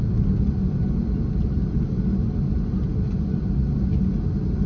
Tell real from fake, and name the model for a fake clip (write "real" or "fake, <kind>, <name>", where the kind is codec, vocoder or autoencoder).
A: real